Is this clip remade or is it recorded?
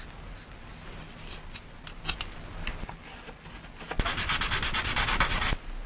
recorded